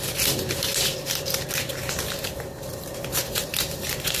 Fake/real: real